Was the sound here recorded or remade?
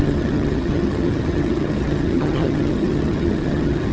remade